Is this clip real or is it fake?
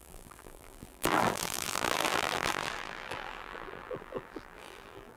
fake